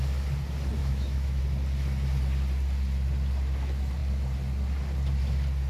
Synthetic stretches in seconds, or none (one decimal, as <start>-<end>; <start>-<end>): 0.8-1.4